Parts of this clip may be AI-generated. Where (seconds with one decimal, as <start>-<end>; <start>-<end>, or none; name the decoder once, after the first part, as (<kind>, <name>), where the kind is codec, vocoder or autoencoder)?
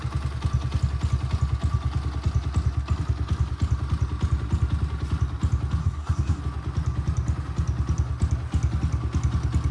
5.8-6.4 (codec, SNAC)